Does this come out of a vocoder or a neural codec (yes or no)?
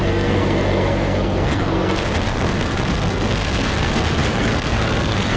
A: yes